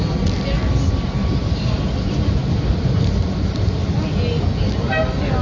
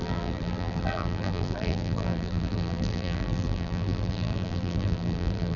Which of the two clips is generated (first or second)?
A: second